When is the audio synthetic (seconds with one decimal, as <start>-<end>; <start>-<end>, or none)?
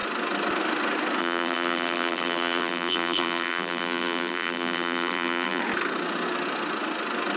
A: 1.2-5.6